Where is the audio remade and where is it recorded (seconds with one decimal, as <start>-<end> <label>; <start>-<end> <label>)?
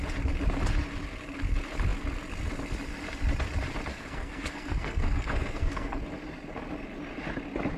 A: 0.0-3.9 recorded; 3.9-6.0 remade; 6.0-7.8 recorded